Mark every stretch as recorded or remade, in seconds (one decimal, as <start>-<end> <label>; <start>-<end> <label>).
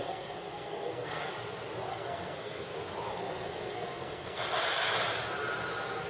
0.0-1.3 remade; 1.3-1.9 recorded; 1.9-2.7 remade; 2.7-3.1 recorded; 3.1-4.4 remade; 4.4-6.1 recorded